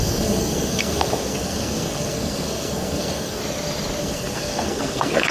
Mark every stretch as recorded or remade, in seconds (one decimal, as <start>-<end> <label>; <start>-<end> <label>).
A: 0.0-3.4 remade; 3.4-4.0 recorded; 4.0-5.3 remade